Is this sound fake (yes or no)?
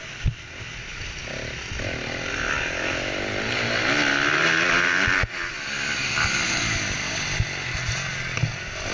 no